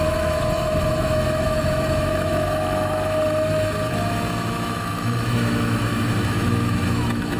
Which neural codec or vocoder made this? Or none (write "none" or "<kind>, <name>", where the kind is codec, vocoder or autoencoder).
autoencoder, DAC-VAE